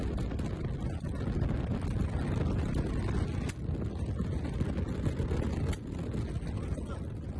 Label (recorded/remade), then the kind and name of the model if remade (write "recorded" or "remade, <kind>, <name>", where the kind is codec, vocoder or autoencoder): recorded